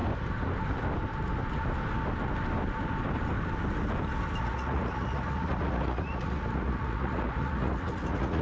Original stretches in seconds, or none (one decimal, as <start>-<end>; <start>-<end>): 0.0-4.4